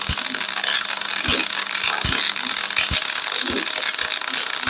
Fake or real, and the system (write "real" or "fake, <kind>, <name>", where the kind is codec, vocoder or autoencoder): real